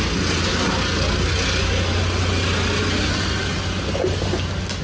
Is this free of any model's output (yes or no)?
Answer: yes